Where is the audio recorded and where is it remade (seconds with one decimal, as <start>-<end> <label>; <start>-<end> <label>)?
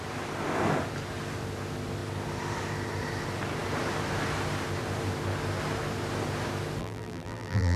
0.0-6.8 recorded; 6.8-7.8 remade